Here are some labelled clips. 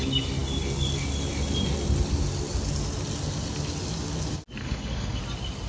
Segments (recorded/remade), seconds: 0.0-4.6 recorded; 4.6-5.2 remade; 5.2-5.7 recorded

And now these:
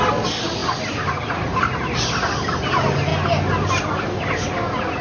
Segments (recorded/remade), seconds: 0.0-5.0 recorded

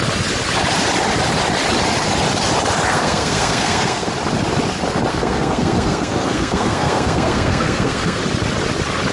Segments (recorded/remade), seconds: 0.0-2.9 recorded; 2.9-4.1 remade; 4.1-5.1 recorded; 5.1-8.2 remade; 8.2-9.1 recorded

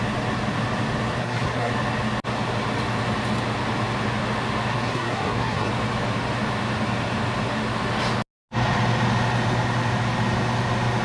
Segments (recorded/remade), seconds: 0.0-1.2 recorded; 1.2-1.7 remade; 1.7-4.7 recorded; 4.7-5.7 remade; 5.7-11.0 recorded

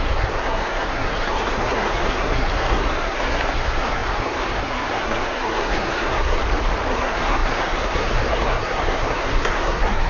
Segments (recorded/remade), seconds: 0.0-6.4 remade; 6.4-6.9 recorded; 6.9-10.1 remade

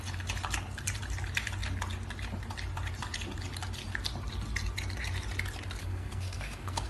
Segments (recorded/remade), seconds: 0.0-5.8 recorded; 5.8-6.9 remade

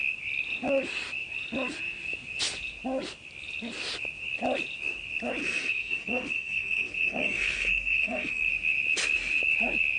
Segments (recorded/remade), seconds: 0.0-5.4 recorded; 5.4-8.5 remade; 8.5-10.0 recorded

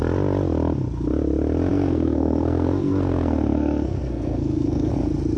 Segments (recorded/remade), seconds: 0.0-1.7 recorded; 1.7-4.9 remade; 4.9-5.4 recorded